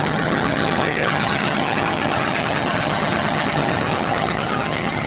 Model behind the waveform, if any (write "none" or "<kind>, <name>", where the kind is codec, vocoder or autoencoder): vocoder, HiFi-GAN